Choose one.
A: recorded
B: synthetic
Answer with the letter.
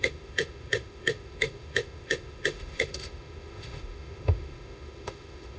B